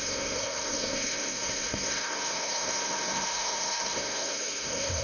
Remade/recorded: remade